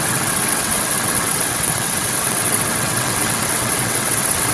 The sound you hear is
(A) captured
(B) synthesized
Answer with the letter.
B